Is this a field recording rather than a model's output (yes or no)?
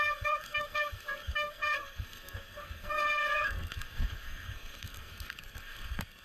no